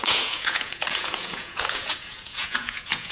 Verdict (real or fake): fake